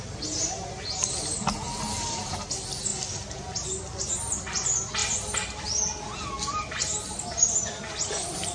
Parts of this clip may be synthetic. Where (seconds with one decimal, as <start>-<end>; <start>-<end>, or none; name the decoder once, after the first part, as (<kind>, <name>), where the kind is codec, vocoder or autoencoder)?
none